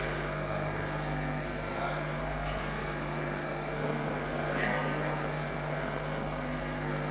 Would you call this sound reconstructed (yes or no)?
yes